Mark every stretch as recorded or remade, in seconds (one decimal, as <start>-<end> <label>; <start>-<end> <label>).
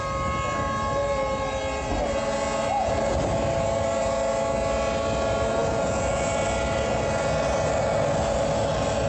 0.0-9.1 recorded